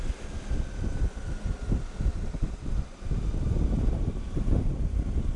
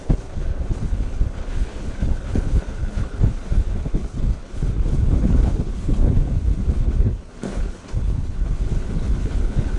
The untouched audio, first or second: first